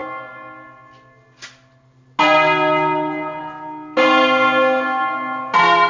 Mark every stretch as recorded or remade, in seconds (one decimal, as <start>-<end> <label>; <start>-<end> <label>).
0.0-5.9 recorded